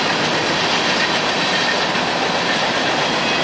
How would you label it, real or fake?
real